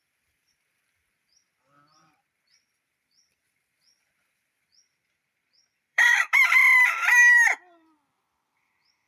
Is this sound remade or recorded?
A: remade